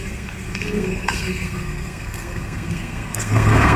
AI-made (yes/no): yes